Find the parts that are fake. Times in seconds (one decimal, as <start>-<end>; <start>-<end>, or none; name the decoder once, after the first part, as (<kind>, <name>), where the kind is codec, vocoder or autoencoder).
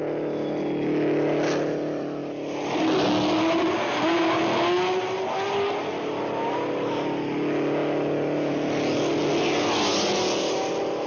none